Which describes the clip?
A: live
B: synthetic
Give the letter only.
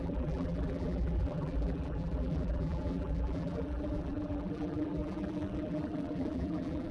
B